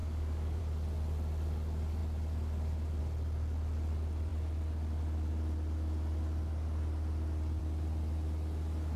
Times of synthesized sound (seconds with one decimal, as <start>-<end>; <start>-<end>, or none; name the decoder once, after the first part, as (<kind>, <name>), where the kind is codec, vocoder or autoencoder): 0.0-0.6 (codec, DAC)